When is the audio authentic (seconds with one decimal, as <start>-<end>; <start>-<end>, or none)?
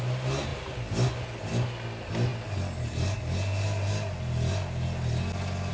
0.0-5.7